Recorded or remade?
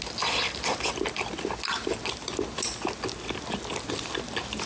recorded